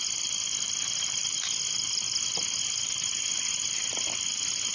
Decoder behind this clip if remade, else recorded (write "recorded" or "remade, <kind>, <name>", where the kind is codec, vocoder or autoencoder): remade, vocoder, BigVGAN v2